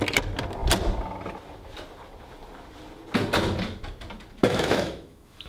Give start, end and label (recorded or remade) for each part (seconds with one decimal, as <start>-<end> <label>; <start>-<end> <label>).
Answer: 0.0-4.4 recorded; 4.4-5.5 remade